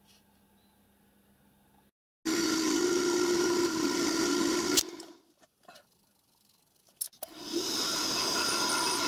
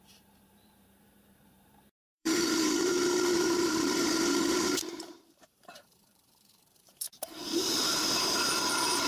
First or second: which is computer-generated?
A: second